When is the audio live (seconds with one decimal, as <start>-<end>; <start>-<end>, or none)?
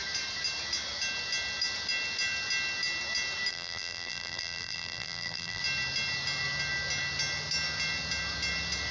0.0-3.5; 5.6-8.9